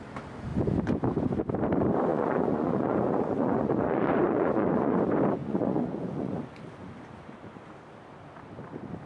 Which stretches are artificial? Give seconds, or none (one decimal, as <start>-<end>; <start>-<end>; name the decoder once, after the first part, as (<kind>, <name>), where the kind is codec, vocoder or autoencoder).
2.1-5.0 (vocoder, Vocos); 5.4-6.4